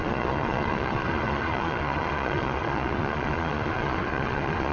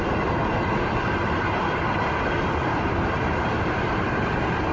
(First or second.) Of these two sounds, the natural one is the second